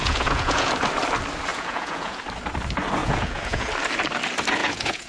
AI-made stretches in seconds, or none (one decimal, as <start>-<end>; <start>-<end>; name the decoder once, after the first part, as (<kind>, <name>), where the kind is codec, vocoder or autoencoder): 0.0-0.7 (vocoder, Vocos); 1.5-2.2; 3.0-3.7; 4.6-5.1